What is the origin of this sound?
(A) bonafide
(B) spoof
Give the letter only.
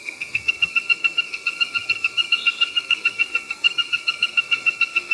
B